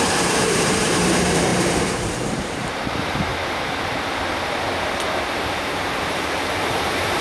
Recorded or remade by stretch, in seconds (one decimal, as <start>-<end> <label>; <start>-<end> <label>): 0.0-3.3 remade; 3.3-5.5 recorded; 5.5-7.2 remade